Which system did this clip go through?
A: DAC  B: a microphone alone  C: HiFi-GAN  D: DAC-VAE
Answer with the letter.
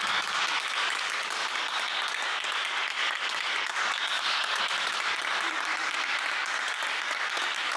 A